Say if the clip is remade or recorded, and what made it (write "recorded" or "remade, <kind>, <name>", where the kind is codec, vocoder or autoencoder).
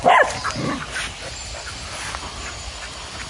recorded